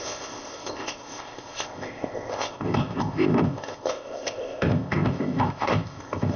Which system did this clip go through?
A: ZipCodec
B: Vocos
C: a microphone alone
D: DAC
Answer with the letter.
A